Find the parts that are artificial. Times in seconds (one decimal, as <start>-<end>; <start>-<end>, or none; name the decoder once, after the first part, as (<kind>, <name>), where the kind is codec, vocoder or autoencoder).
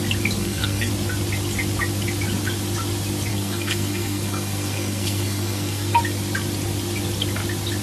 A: 0.4-0.9 (codec, SNAC); 3.3-6.0